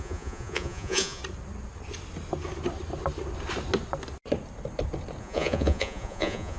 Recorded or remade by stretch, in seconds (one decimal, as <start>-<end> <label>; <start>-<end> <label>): 0.0-1.2 remade; 1.2-5.2 recorded; 5.2-6.6 remade